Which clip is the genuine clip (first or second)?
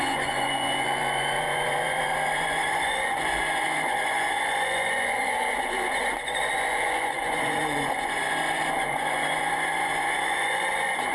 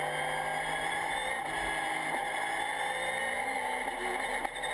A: second